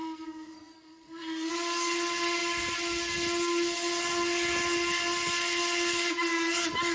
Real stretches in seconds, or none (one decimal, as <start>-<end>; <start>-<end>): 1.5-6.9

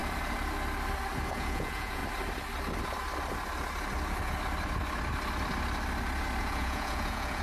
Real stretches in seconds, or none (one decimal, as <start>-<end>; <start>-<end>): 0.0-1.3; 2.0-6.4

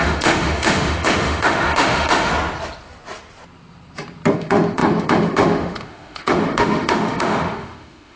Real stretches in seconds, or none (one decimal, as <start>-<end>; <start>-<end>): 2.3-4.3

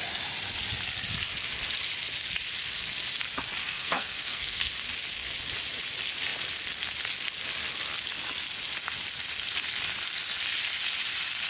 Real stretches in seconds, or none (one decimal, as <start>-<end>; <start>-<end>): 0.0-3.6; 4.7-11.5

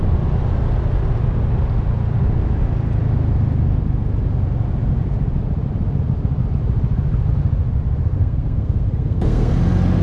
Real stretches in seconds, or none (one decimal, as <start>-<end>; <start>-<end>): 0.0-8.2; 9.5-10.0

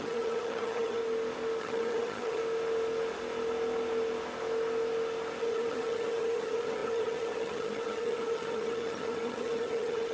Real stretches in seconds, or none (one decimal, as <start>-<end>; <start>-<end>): 1.0-1.6; 2.4-5.4

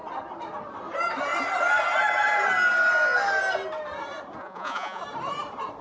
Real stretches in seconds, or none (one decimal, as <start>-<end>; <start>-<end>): 0.0-4.4; 5.0-5.8

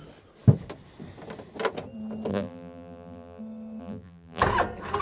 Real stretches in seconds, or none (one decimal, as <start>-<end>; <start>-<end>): 0.0-2.3; 3.4-3.8; 4.4-5.0